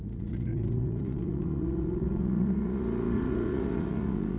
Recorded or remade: remade